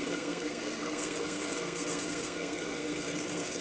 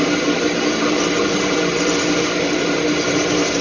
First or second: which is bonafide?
second